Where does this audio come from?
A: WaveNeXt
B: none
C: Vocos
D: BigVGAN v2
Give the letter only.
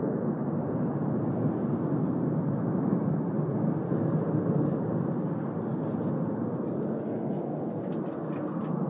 B